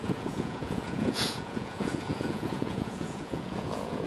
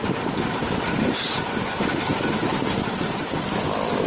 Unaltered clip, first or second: second